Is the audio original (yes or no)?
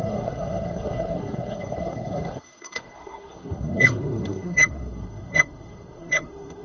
no